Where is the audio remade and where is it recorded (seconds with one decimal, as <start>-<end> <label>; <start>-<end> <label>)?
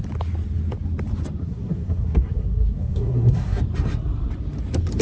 0.0-1.4 recorded; 1.4-3.6 remade; 3.6-5.0 recorded